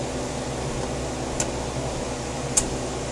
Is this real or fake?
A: real